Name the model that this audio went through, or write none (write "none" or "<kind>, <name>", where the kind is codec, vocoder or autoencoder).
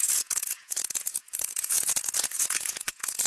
vocoder, Vocos